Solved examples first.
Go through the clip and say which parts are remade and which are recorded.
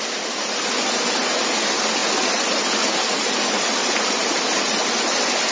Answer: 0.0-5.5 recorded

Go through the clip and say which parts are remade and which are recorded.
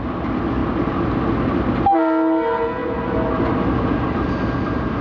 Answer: 0.0-5.0 recorded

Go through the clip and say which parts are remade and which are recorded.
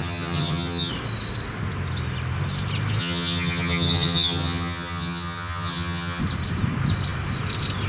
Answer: 0.0-0.9 remade; 0.9-3.0 recorded; 3.0-6.2 remade; 6.2-7.9 recorded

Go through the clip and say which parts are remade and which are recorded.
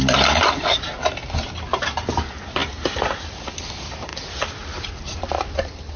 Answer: 0.0-6.0 recorded